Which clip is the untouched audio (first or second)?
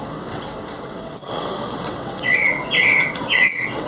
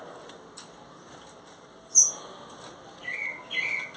second